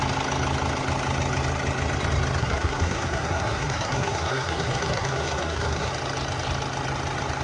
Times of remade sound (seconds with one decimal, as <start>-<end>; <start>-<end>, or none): 2.4-5.9